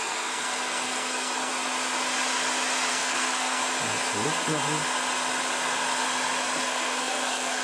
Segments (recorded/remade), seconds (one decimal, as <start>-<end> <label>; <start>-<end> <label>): 0.0-1.5 remade; 1.5-2.9 recorded; 2.9-3.6 remade; 3.6-6.6 recorded; 6.6-7.6 remade